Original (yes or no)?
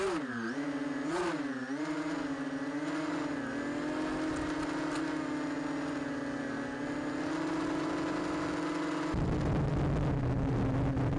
yes